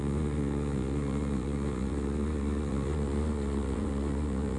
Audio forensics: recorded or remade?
remade